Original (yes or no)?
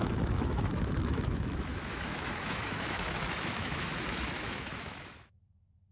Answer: no